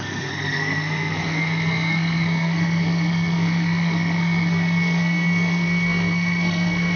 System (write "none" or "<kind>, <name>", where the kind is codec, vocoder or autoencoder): codec, SNAC